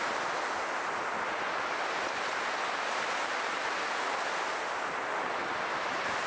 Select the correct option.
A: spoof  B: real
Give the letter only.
B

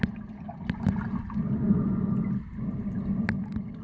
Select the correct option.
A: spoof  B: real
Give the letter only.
B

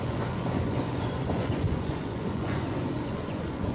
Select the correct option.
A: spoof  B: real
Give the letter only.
A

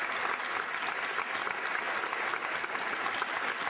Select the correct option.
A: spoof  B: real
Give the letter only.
B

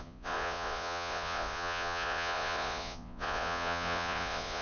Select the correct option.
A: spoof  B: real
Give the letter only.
A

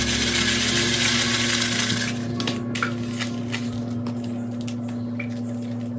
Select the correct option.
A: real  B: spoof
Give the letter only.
A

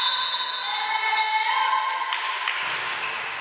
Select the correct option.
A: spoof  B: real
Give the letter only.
B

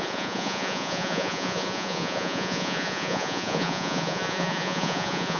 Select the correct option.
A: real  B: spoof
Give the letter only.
B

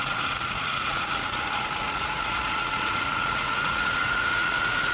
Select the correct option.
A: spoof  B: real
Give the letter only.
A